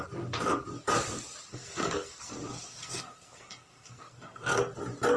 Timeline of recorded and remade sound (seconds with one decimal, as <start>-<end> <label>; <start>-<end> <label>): 0.0-1.5 recorded; 1.5-4.6 remade; 4.6-5.2 recorded